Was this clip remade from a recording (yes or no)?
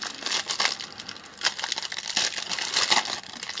no